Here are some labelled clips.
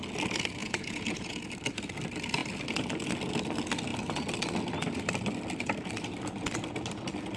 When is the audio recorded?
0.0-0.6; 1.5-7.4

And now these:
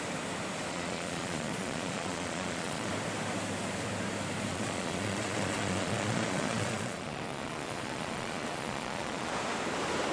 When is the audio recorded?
0.0-0.7; 2.9-4.5; 9.3-10.1